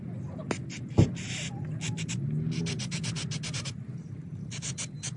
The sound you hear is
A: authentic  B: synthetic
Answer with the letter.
A